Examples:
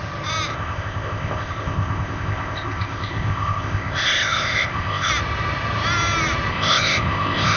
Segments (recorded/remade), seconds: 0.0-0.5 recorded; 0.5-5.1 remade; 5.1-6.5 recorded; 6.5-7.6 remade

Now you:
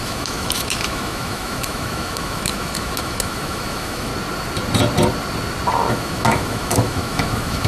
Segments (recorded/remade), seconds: 0.0-4.1 remade; 4.1-5.9 recorded; 5.9-7.7 remade